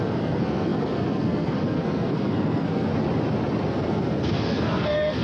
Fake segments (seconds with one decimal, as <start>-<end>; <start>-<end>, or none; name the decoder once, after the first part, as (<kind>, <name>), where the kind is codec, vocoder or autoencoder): 0.0-2.9 (codec, SNAC); 3.7-5.2